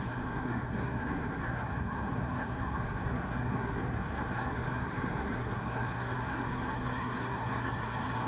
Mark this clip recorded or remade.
remade